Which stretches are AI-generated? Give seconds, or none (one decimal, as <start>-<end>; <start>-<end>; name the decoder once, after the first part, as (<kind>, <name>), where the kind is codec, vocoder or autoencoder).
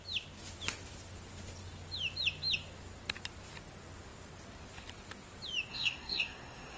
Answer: 5.7-6.8 (codec, SNAC)